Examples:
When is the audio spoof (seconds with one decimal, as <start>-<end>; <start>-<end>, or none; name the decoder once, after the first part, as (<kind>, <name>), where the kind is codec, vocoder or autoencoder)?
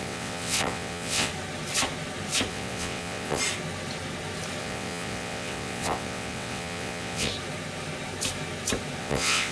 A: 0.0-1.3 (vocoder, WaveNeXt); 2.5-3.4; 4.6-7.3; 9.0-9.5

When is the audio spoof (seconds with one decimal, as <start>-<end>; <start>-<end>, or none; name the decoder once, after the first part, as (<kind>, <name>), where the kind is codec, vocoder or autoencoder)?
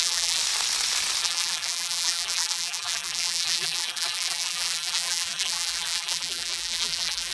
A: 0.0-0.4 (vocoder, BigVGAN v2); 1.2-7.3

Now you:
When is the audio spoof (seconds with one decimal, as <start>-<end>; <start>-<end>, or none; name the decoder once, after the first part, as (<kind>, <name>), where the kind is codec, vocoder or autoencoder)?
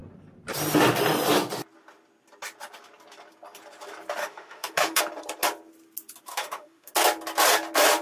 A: 4.2-5.0 (autoencoder, DAC-VAE); 6.3-6.9